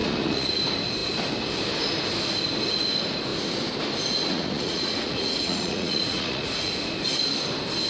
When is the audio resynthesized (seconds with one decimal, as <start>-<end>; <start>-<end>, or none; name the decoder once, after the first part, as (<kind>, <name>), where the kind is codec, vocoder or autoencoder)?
0.0-0.6 (vocoder, Vocos); 4.3-6.7